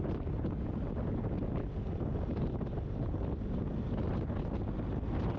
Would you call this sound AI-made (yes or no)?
no